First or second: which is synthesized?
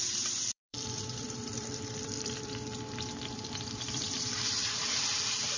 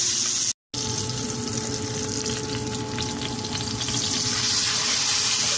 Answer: first